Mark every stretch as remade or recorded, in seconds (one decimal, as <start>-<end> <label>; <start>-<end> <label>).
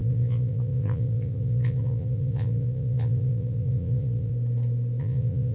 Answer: 0.0-4.3 remade; 4.3-5.0 recorded; 5.0-5.5 remade